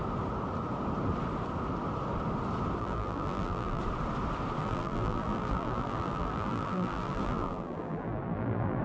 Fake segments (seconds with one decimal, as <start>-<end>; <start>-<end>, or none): 2.8-3.8; 4.6-8.8